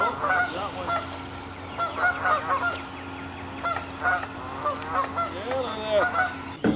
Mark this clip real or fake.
real